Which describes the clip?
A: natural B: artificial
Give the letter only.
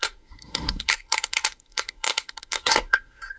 B